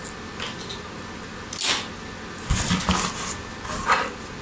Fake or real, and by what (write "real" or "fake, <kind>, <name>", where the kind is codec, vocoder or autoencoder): real